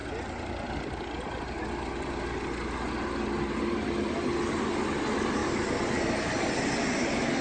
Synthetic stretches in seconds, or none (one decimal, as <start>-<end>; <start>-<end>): none